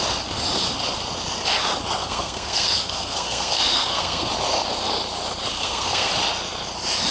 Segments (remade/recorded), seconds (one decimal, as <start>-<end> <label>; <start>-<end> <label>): 0.0-2.0 recorded; 2.0-4.3 remade; 4.3-5.5 recorded; 5.5-6.1 remade; 6.1-7.1 recorded